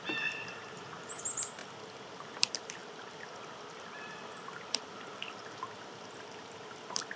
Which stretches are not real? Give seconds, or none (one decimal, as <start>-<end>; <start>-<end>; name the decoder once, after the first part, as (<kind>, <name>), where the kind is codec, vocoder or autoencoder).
0.0-1.6 (vocoder, BigVGAN v2); 2.3-2.8; 6.4-7.2